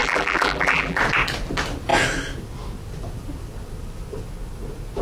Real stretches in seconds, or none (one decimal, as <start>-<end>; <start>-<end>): 1.0-5.0